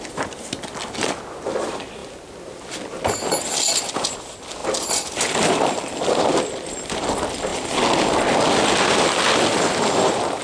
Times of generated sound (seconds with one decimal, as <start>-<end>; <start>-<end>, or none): 4.6-6.3

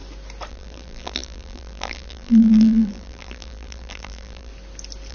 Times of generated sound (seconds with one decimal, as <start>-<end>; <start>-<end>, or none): 0.5-4.5

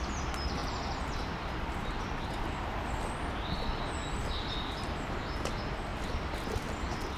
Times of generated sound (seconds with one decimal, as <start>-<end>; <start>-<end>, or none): 0.6-3.1; 5.9-6.5

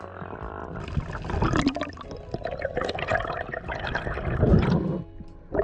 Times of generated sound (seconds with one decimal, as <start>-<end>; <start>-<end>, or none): none

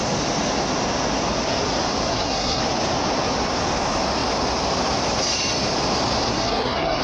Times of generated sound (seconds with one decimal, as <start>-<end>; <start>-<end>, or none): 2.1-2.6; 6.3-7.0